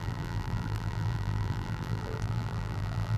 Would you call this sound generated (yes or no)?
yes